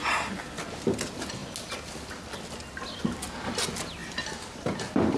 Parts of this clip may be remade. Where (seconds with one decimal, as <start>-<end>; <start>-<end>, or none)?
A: none